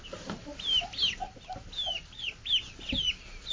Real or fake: real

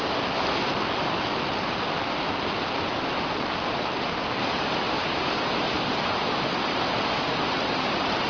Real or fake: real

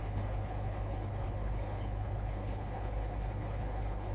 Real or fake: fake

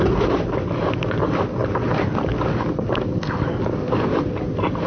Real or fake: real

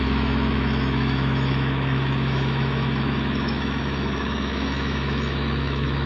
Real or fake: fake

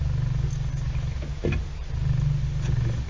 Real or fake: real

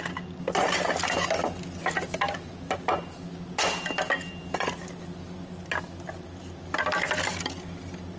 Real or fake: real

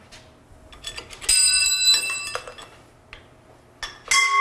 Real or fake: real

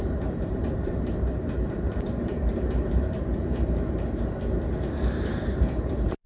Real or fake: fake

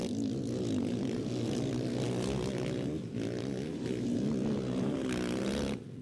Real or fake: real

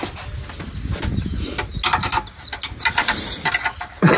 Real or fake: real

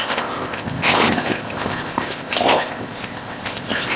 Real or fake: fake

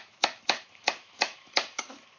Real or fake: fake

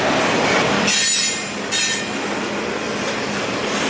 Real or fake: real